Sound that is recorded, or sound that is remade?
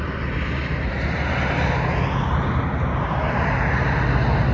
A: recorded